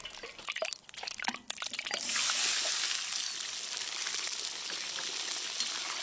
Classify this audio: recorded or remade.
recorded